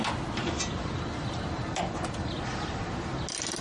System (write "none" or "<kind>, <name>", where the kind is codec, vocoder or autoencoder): none